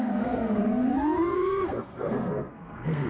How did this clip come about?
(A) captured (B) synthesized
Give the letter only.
B